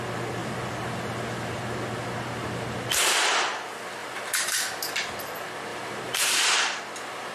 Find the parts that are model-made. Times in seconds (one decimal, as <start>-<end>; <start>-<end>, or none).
0.4-1.6; 4.0-4.9; 5.7-6.8